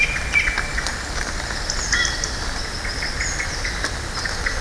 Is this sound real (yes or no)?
yes